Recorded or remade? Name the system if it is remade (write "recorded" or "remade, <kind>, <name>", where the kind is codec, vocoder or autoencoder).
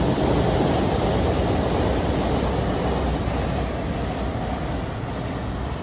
recorded